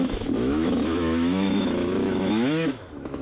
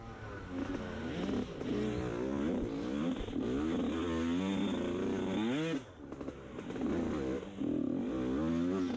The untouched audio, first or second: second